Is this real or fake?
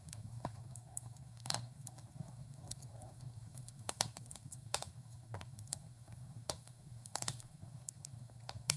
fake